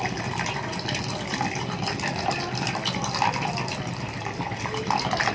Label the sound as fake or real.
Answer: real